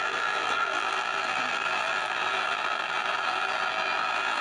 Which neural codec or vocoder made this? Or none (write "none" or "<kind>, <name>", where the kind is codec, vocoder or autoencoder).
vocoder, BigVGAN v2